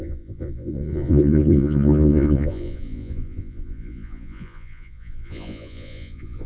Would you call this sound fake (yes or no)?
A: yes